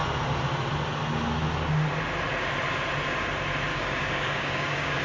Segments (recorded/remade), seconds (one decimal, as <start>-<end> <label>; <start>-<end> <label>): 0.0-3.7 recorded; 3.7-5.0 remade